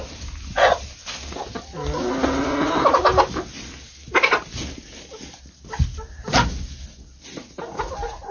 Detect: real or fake real